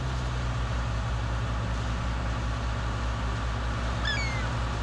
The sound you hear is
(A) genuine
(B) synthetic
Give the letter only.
A